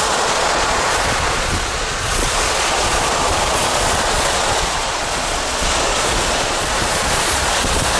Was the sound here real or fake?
fake